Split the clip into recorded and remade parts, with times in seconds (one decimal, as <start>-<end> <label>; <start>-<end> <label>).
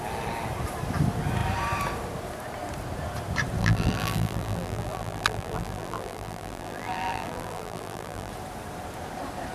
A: 0.0-3.6 recorded; 3.6-8.3 remade; 8.3-9.5 recorded